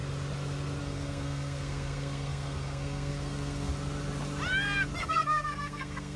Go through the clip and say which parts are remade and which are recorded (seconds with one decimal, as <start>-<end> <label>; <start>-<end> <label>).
0.0-0.8 recorded; 0.8-3.7 remade; 3.7-5.0 recorded; 5.0-6.2 remade